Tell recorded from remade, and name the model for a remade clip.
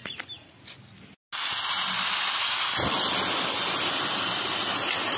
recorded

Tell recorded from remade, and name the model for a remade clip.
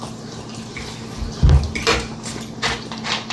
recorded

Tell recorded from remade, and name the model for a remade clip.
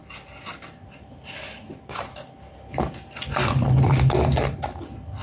recorded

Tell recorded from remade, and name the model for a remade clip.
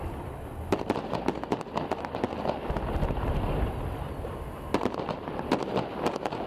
recorded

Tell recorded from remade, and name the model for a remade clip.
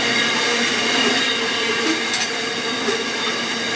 recorded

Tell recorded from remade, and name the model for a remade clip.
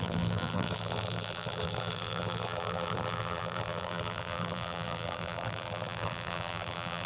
remade, vocoder, BigVGAN v2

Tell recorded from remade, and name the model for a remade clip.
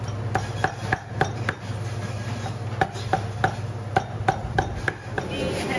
recorded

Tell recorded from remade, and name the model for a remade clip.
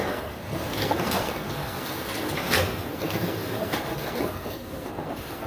remade, codec, SNAC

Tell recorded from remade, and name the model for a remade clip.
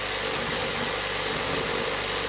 recorded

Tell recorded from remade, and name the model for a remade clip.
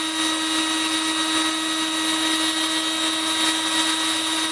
recorded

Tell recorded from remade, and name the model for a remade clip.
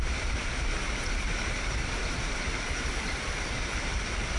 recorded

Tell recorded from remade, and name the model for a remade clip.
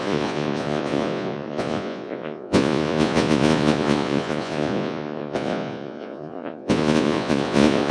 remade, vocoder, Vocos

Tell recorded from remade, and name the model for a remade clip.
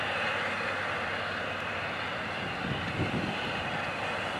recorded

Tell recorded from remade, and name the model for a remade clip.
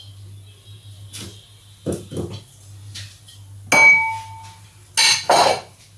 recorded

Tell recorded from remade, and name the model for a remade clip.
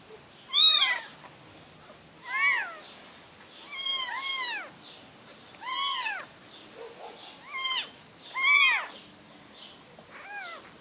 recorded